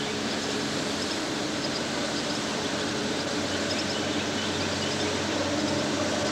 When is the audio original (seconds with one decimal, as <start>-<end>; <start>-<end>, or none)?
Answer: 0.0-2.0; 3.3-6.3